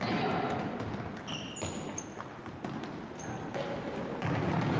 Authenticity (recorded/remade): recorded